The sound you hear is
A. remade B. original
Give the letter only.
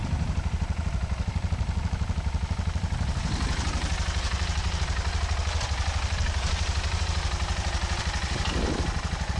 A